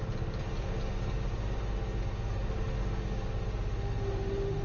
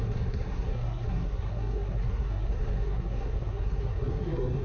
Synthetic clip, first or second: second